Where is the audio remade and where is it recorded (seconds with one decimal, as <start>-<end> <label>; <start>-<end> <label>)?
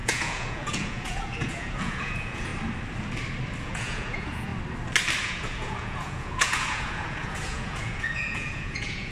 0.0-2.5 remade; 2.5-3.6 recorded; 3.6-4.5 remade; 4.5-5.2 recorded; 5.2-9.1 remade